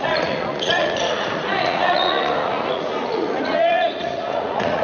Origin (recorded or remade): remade